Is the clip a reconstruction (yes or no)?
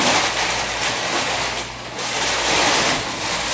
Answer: no